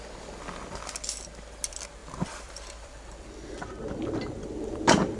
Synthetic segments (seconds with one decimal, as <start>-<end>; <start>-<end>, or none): 2.0-5.2